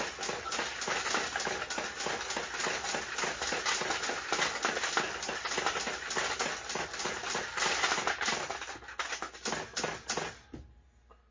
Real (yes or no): yes